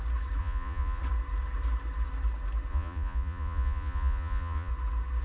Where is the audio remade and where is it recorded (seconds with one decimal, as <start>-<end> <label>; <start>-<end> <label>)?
0.0-0.4 recorded; 0.4-1.0 remade; 1.0-2.7 recorded; 2.7-4.7 remade; 4.7-5.2 recorded